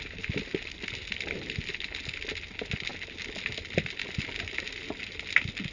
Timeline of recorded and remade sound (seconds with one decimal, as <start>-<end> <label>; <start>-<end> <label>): 0.0-5.7 recorded

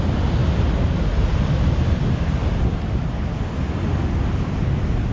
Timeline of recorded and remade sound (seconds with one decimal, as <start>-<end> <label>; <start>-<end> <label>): 0.0-5.1 recorded

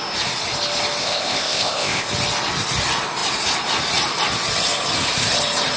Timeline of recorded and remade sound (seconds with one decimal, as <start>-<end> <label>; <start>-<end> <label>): 0.0-1.0 recorded; 1.0-2.1 remade; 2.1-5.8 recorded

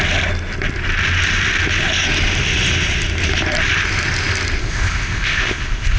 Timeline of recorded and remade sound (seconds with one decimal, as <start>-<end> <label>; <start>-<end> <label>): 0.0-4.6 recorded; 4.6-6.0 remade

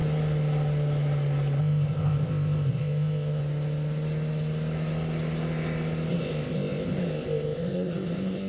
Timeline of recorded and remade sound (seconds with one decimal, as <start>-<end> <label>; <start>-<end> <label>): 0.0-1.6 recorded; 1.6-3.4 remade; 3.4-6.1 recorded; 6.1-8.5 remade

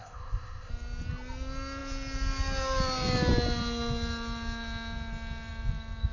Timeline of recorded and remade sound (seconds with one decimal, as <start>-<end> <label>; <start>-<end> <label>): 0.0-0.7 remade; 0.7-6.1 recorded

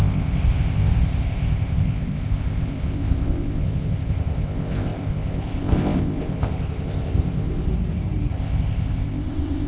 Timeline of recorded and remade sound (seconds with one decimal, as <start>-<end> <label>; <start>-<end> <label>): 0.0-7.7 remade; 7.7-8.3 recorded; 8.3-9.7 remade

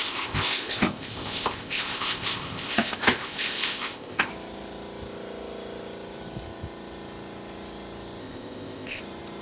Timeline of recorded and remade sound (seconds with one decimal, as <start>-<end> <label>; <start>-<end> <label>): 0.0-4.3 remade; 4.3-8.2 recorded; 8.2-9.0 remade; 9.0-9.4 recorded